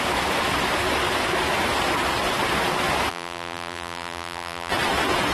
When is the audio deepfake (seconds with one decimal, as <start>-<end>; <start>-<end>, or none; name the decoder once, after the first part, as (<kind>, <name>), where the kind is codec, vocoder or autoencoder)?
3.1-4.7 (vocoder, BigVGAN v2)